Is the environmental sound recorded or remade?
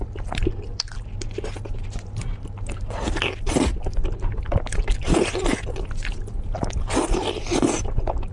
recorded